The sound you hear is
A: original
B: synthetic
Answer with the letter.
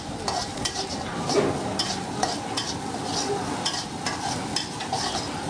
A